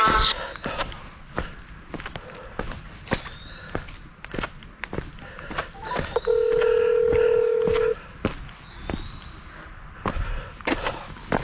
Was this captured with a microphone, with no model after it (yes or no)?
yes